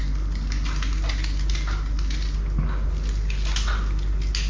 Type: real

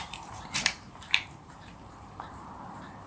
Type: fake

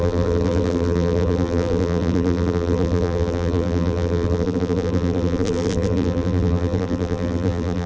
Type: fake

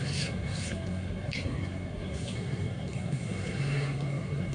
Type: fake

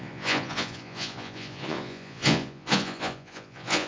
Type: fake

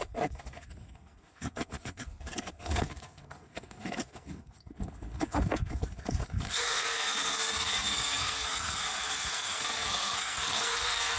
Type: fake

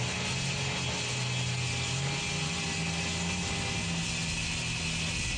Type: real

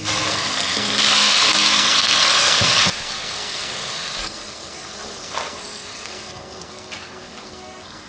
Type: fake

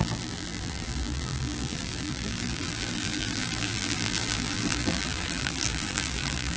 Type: fake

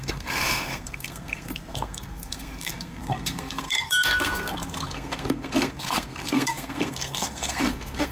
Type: fake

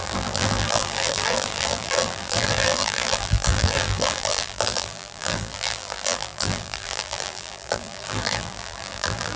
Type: fake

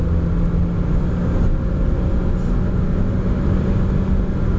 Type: real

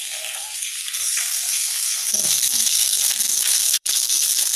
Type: fake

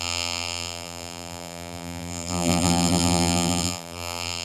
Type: fake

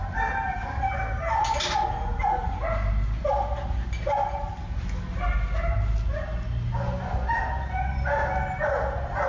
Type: real